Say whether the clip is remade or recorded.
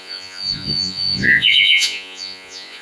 remade